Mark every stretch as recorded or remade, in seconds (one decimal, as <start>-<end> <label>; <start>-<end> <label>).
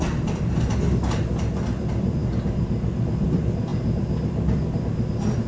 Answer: 0.0-5.5 recorded